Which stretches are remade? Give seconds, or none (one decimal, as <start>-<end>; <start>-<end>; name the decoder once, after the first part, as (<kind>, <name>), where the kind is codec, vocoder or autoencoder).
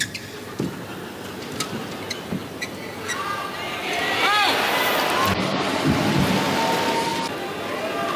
none